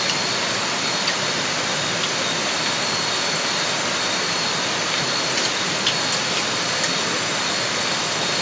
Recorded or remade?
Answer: recorded